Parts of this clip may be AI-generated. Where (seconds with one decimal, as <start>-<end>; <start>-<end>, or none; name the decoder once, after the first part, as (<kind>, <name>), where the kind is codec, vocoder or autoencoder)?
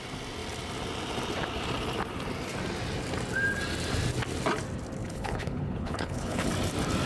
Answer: 5.0-6.5 (codec, HILCodec)